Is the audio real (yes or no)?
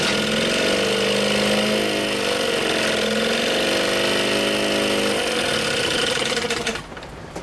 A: yes